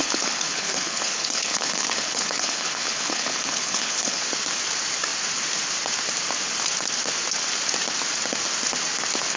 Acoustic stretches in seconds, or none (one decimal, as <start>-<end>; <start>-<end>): 4.2-9.4